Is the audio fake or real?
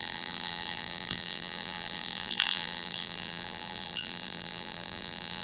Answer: fake